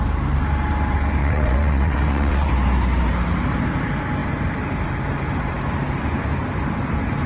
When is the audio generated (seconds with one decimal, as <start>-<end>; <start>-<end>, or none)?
1.2-2.5